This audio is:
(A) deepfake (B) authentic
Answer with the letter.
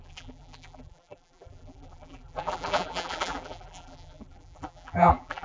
A